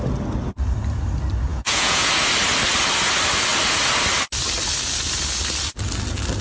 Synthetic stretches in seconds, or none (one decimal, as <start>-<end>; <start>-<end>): 1.5-2.1